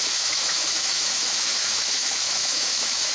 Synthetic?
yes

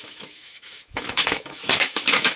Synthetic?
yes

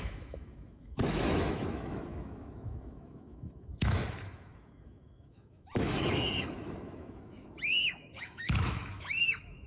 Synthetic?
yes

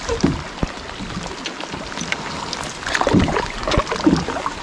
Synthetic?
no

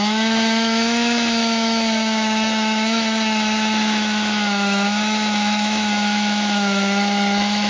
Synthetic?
yes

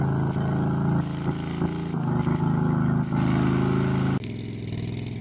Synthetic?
no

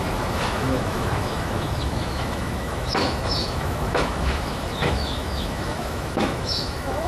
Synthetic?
yes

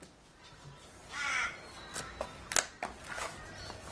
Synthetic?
no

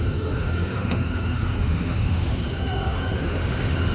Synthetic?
yes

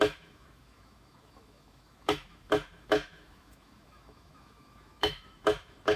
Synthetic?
yes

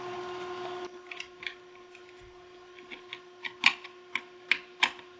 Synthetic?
no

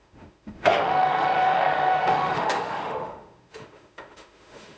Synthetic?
yes